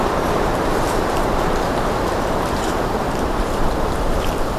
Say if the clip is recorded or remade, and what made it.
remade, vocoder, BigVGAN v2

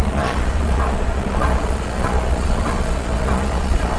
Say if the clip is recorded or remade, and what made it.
remade, vocoder, Vocos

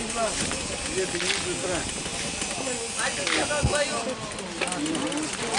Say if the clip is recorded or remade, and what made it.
recorded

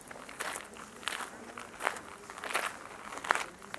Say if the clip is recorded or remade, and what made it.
recorded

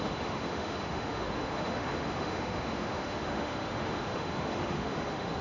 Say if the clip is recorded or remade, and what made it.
remade, autoencoder, DAC-VAE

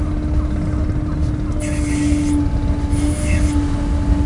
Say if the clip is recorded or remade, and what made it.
recorded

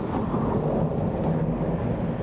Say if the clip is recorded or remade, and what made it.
recorded